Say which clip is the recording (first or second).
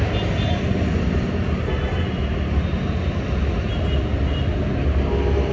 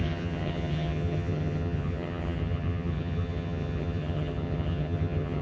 first